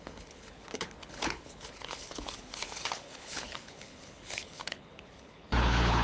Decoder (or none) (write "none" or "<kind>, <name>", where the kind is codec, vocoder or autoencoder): codec, HILCodec